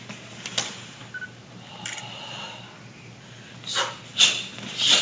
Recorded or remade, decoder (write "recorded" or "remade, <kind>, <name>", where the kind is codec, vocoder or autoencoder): recorded